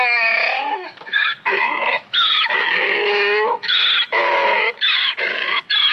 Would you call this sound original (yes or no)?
no